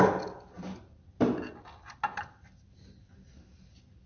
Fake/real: real